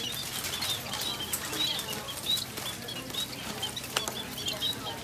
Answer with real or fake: real